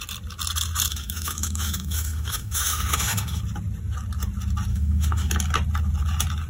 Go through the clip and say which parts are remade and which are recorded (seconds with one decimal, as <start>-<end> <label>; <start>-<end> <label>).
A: 0.0-0.9 recorded; 0.9-3.4 remade; 3.4-4.7 recorded; 4.7-5.3 remade; 5.3-6.5 recorded